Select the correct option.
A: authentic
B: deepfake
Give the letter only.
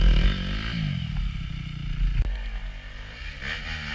A